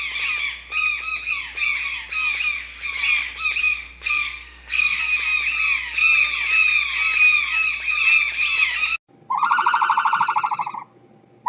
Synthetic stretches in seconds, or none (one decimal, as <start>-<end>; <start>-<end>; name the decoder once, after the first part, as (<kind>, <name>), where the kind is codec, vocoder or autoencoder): 3.6-5.0 (codec, SNAC)